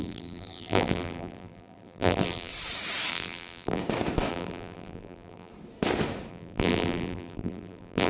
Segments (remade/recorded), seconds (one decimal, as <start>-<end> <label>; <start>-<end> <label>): 0.0-2.5 remade; 2.5-3.1 recorded; 3.1-3.8 remade; 3.8-4.3 recorded; 4.3-5.5 remade; 5.5-6.3 recorded; 6.3-8.1 remade